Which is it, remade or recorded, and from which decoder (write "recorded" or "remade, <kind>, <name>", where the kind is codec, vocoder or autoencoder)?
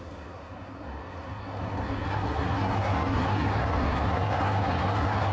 remade, codec, SNAC